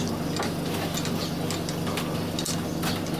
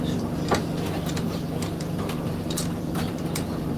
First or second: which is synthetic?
second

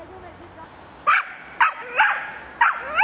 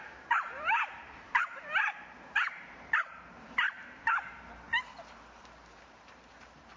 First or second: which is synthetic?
second